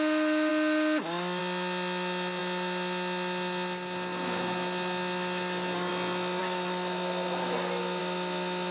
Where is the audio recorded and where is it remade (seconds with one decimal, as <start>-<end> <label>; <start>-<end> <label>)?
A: 0.0-8.7 recorded